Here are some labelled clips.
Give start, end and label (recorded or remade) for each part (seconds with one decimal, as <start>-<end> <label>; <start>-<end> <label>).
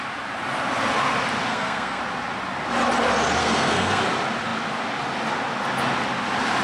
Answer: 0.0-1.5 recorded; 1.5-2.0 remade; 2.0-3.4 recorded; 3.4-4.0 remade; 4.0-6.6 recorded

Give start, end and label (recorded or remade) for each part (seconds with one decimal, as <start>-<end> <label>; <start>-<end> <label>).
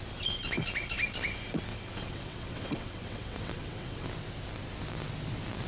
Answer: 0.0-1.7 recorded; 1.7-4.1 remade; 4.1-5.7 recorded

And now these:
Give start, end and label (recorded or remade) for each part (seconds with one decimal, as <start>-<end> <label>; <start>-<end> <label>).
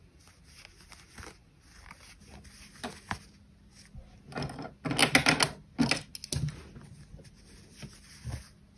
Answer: 0.0-8.8 recorded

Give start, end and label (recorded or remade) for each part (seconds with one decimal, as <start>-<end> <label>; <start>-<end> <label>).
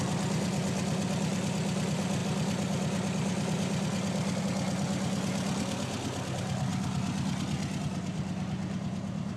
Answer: 0.0-9.4 recorded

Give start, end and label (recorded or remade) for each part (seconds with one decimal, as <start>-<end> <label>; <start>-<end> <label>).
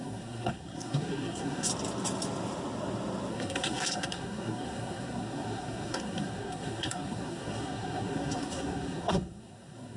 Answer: 0.0-1.7 remade; 1.7-3.3 recorded; 3.3-10.0 remade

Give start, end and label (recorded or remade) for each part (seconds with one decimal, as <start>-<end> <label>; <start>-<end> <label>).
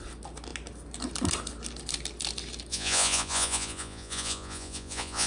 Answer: 0.0-2.7 recorded; 2.7-5.3 remade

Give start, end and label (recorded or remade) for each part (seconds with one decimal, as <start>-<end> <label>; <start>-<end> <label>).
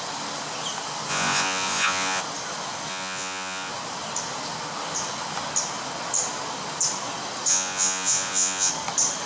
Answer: 0.0-1.1 recorded; 1.1-2.2 remade; 2.2-2.9 recorded; 2.9-3.7 remade; 3.7-7.5 recorded; 7.5-8.7 remade; 8.7-9.3 recorded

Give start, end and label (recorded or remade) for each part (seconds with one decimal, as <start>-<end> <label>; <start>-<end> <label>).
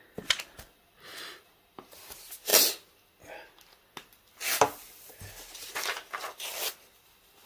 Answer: 0.0-7.5 recorded